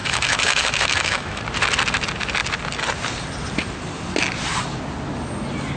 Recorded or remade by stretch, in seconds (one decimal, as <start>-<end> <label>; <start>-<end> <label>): 0.0-1.4 remade; 1.4-5.8 recorded